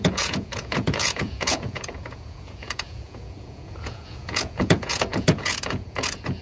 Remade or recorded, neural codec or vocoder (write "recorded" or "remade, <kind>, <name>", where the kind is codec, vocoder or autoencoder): remade, vocoder, Vocos